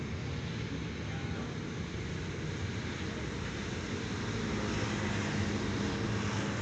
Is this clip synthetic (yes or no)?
no